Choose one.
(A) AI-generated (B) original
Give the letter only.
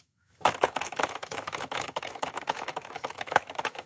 A